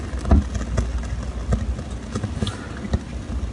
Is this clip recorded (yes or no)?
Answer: yes